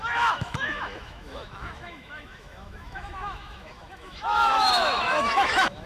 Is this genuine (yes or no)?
no